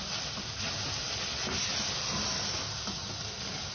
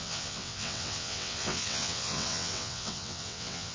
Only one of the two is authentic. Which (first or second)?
first